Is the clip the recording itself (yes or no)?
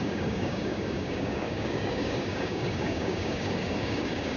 no